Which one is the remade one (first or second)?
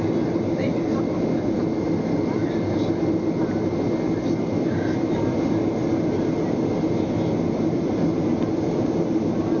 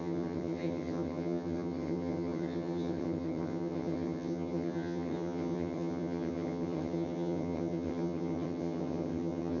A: second